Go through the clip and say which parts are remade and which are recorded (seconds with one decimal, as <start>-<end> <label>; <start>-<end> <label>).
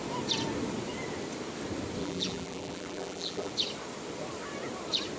0.0-2.0 recorded; 2.0-3.5 remade; 3.5-5.2 recorded